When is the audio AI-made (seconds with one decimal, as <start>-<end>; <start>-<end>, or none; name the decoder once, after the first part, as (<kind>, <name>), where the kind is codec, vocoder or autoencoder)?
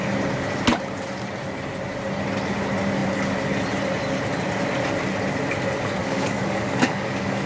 6.0-7.5 (codec, DAC)